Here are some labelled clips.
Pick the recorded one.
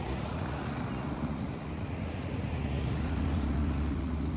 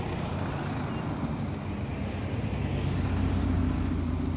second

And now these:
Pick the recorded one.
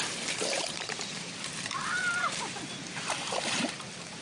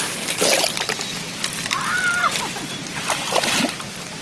second